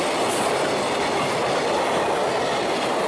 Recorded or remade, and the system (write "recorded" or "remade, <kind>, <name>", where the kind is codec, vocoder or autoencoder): recorded